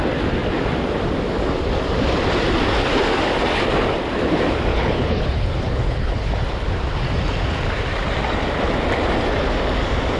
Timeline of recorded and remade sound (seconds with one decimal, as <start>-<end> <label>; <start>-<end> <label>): 0.0-4.7 recorded; 4.7-6.3 remade; 6.3-10.2 recorded